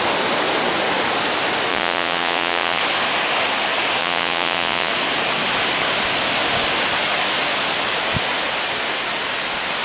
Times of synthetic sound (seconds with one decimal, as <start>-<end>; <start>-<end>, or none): 1.7-2.8; 4.0-4.9